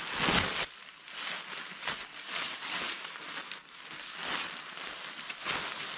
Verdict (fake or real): real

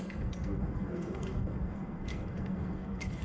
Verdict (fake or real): fake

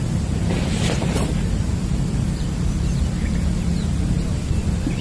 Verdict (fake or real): real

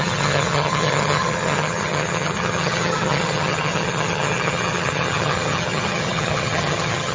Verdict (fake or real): fake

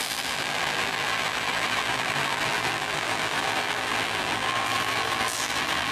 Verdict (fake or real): fake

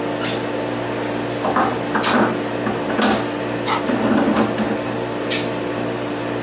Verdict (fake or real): real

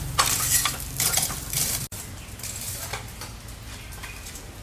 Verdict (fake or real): real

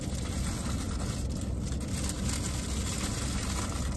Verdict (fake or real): real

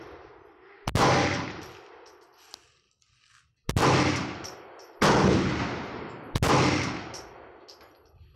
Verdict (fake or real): real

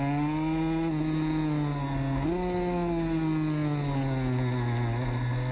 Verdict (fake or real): real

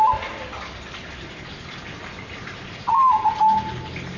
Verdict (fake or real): real